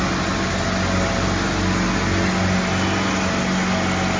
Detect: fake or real real